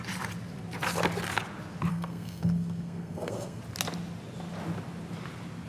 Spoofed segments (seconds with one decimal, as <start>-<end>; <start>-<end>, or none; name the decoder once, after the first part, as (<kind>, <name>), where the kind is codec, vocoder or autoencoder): 1.9-3.6 (codec, SNAC)